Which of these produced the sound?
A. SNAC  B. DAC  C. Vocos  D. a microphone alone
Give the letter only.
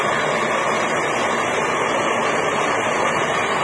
D